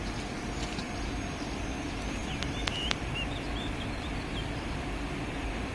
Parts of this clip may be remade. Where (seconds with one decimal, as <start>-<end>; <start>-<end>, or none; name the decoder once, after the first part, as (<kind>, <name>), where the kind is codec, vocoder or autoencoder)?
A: none